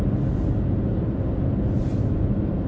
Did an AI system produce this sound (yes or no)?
no